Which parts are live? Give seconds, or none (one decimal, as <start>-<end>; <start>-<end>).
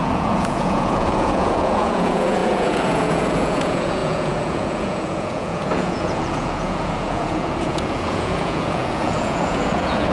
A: none